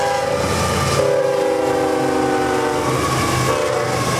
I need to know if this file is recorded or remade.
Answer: recorded